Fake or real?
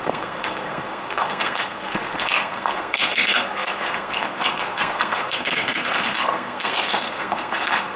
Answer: fake